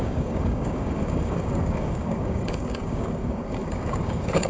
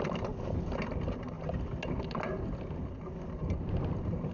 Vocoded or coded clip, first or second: first